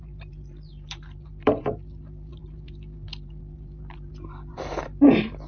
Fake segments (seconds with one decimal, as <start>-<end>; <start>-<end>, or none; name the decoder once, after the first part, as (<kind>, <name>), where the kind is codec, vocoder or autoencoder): 0.0-5.5 (vocoder, BigVGAN v2)